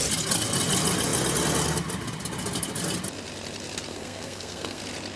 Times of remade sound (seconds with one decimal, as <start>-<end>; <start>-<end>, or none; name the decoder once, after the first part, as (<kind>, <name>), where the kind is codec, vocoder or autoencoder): 3.9-4.8 (codec, SNAC)